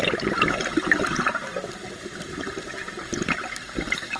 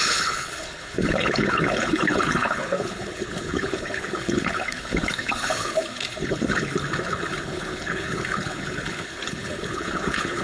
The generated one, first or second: second